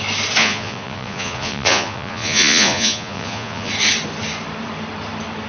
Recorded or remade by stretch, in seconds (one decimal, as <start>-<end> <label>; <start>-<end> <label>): 0.0-0.4 recorded; 0.4-3.7 remade; 3.7-5.5 recorded